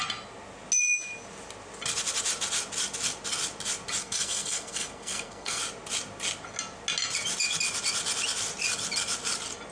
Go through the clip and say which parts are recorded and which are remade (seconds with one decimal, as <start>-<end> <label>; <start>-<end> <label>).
0.0-4.0 recorded; 4.0-5.6 remade; 5.6-9.7 recorded

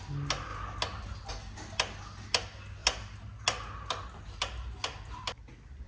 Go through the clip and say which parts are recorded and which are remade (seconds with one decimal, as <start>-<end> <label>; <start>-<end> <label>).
0.0-5.9 recorded

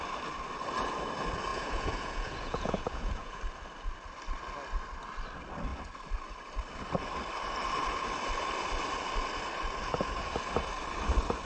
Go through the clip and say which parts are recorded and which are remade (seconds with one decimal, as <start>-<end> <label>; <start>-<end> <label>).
0.0-1.5 recorded; 1.5-3.4 remade; 3.4-11.5 recorded

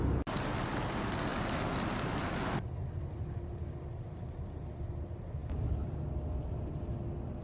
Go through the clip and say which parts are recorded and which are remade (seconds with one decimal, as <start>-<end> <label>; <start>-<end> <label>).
0.0-7.4 recorded

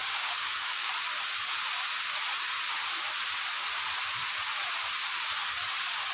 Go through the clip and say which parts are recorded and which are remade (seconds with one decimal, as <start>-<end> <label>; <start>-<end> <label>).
0.0-0.9 remade; 0.9-6.1 recorded

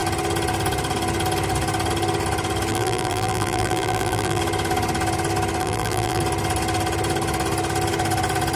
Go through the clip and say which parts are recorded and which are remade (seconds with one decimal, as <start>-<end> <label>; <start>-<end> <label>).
0.0-2.7 recorded; 2.7-4.4 remade; 4.4-5.6 recorded; 5.6-6.2 remade; 6.2-8.6 recorded

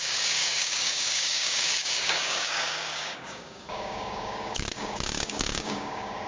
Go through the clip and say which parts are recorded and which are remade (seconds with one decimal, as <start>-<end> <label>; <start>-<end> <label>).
0.0-6.3 remade